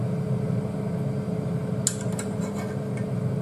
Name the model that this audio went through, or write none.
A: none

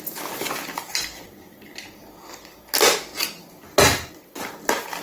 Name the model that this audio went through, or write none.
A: none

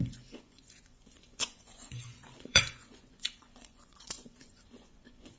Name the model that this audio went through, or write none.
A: vocoder, Vocos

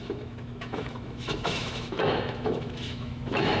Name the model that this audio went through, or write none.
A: autoencoder, DAC-VAE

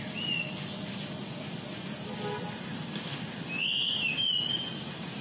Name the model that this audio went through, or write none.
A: none